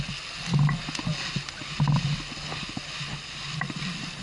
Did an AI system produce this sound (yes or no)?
no